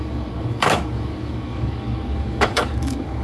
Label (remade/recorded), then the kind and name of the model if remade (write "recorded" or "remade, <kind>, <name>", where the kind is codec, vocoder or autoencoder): remade, codec, DAC